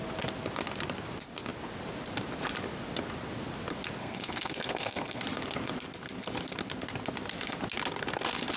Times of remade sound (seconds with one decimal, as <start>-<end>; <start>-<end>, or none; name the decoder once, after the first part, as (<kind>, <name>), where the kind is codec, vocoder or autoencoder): 4.0-5.2 (codec, SNAC)